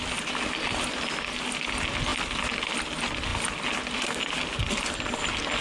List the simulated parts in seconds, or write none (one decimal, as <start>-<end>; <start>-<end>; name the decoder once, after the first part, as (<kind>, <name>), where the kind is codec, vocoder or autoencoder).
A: none